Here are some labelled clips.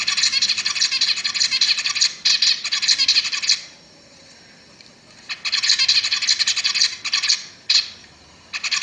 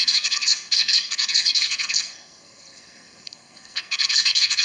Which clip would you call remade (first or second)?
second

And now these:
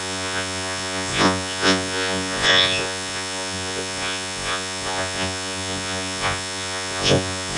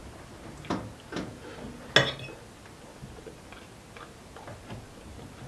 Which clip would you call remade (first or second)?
first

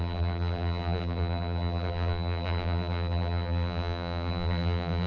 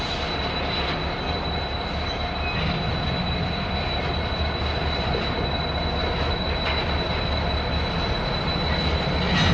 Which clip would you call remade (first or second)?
first